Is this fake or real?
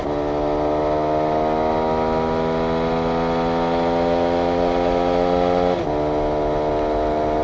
real